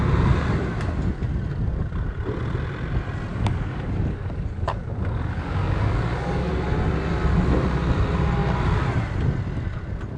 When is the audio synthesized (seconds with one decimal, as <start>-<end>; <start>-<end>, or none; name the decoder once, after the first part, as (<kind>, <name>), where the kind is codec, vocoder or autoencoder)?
3.3-6.5 (codec, DAC)